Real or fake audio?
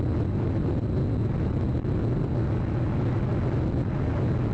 real